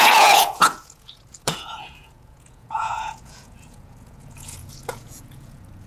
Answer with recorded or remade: remade